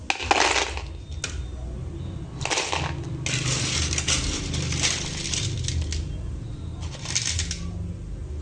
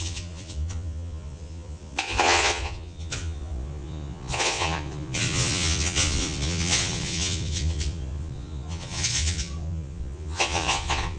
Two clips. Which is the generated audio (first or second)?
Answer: second